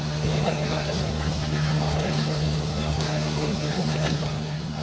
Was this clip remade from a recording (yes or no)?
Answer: yes